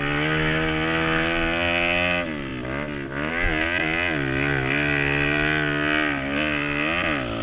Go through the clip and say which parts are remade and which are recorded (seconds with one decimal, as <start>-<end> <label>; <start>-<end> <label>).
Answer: 0.0-7.4 recorded

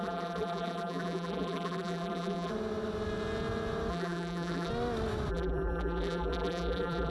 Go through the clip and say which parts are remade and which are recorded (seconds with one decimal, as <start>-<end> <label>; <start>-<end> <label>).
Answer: 0.0-2.5 remade; 2.5-3.9 recorded; 3.9-4.7 remade; 4.7-5.3 recorded; 5.3-7.1 remade

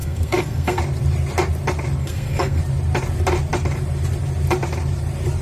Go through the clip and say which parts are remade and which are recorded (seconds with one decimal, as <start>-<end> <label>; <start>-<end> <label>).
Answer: 0.0-0.8 remade; 0.8-2.0 recorded; 2.0-2.6 remade; 2.6-5.4 recorded

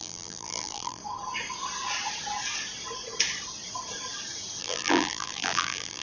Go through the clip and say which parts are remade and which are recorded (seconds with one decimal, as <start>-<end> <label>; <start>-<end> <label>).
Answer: 0.0-1.0 remade; 1.0-4.6 recorded; 4.6-6.0 remade

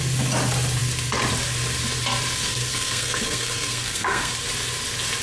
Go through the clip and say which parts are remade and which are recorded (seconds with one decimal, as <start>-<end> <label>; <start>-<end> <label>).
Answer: 0.0-2.5 recorded; 2.5-4.3 remade; 4.3-5.2 recorded

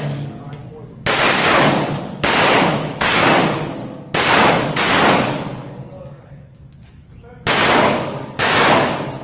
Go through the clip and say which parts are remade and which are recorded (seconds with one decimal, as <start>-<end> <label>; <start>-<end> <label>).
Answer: 0.0-3.8 remade; 3.8-4.5 recorded; 4.5-9.2 remade

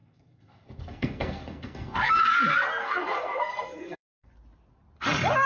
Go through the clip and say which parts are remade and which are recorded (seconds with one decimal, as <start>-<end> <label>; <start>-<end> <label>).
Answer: 0.0-2.1 remade; 2.1-2.8 recorded; 2.8-4.3 remade; 4.3-5.5 recorded